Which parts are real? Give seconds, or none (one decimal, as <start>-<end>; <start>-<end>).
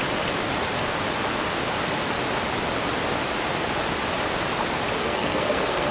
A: 0.0-5.0